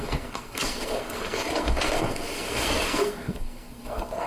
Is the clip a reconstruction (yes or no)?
yes